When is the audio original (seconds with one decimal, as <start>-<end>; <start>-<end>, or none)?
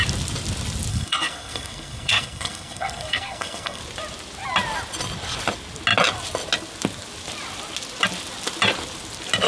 0.0-0.9; 3.8-9.5